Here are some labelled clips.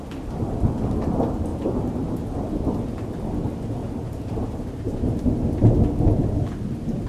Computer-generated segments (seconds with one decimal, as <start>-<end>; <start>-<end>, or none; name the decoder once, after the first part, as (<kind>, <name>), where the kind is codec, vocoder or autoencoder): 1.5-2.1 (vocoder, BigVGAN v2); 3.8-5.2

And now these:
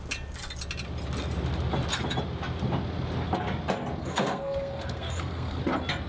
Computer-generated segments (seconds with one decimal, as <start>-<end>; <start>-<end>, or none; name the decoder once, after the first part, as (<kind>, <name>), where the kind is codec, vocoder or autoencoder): 4.0-5.6 (codec, SNAC)

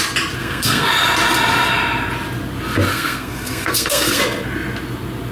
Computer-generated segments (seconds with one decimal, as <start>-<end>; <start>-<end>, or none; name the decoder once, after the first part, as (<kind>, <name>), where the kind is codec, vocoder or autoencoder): 0.4-0.9 (codec, SNAC); 2.9-4.2

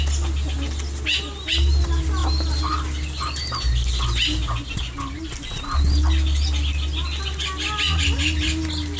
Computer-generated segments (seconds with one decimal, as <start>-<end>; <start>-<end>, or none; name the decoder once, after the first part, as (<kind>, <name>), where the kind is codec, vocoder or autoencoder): none